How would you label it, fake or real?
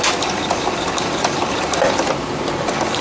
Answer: real